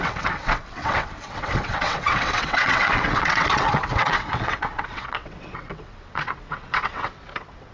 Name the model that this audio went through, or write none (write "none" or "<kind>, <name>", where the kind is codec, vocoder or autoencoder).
vocoder, WaveNeXt